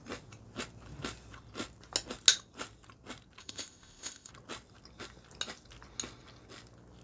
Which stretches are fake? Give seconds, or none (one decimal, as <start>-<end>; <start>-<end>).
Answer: 3.4-4.3